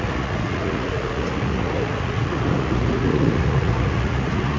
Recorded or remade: remade